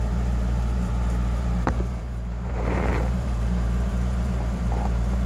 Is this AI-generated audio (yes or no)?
yes